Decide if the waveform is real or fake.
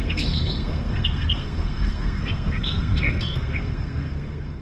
fake